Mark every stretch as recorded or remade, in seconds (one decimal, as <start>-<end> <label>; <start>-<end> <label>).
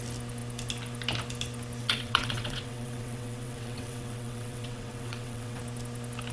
0.0-1.8 recorded; 1.8-5.6 remade; 5.6-6.3 recorded